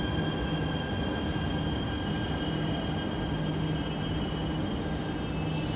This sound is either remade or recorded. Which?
recorded